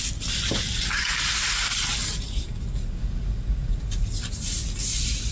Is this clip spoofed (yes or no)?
no